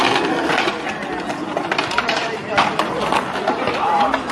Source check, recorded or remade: recorded